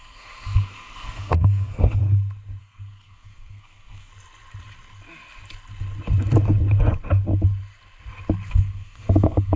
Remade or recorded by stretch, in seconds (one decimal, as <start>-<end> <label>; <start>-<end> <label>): 0.0-2.0 remade; 2.0-2.6 recorded; 2.6-4.1 remade; 4.1-8.5 recorded; 8.5-9.6 remade